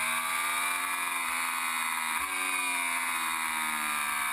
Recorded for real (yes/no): yes